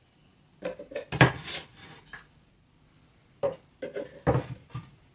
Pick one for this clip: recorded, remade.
recorded